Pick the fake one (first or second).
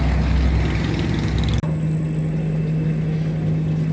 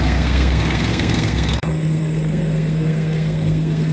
second